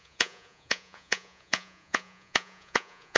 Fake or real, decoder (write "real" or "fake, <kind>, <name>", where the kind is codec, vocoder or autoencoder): fake, vocoder, Vocos